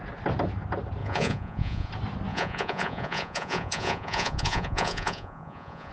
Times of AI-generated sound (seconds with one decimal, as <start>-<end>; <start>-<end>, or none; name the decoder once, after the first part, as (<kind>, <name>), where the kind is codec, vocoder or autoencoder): 1.0-1.9 (vocoder, Vocos); 2.3-5.9

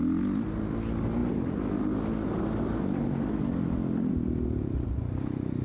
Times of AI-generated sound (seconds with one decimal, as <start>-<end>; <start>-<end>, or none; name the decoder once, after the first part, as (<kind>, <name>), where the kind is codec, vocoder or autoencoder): none

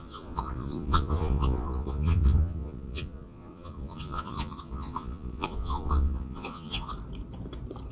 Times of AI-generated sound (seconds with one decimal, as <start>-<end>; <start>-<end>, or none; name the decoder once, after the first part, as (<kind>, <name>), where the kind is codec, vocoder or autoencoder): 0.0-6.9 (vocoder, Vocos)

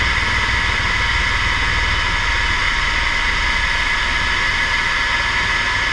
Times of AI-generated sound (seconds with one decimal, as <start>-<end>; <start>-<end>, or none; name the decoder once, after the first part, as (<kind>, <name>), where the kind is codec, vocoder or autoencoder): none

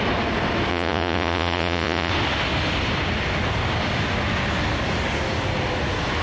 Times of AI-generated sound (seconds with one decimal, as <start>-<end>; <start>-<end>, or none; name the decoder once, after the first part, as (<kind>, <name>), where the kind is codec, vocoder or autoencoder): 0.7-2.1 (vocoder, Vocos)

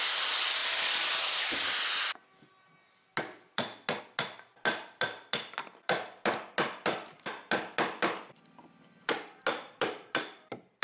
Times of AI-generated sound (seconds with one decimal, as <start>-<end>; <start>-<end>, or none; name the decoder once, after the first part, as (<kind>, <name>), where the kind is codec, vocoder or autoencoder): none

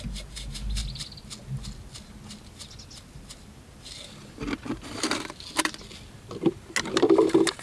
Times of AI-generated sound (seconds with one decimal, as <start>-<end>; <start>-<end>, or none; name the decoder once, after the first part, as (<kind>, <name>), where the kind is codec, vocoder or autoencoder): none